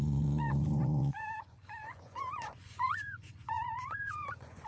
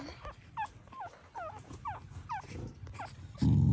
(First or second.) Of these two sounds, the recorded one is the second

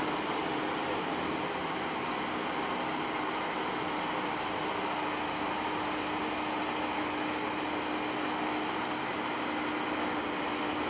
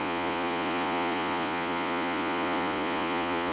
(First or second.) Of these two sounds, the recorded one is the first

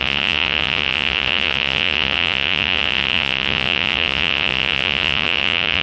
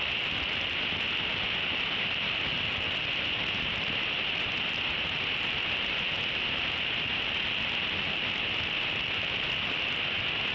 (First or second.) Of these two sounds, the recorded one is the second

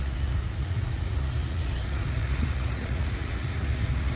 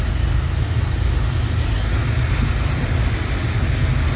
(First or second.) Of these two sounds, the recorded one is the second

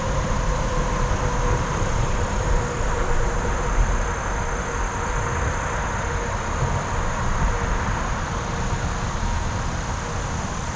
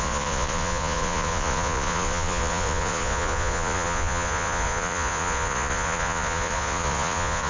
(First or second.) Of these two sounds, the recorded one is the first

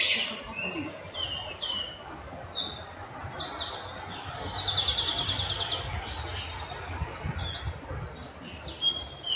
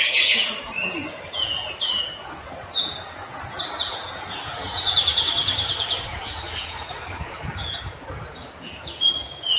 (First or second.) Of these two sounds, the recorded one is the first